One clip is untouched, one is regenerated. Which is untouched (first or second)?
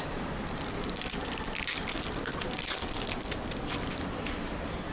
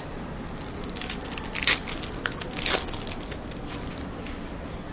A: second